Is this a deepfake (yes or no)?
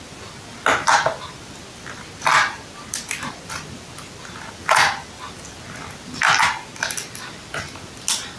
no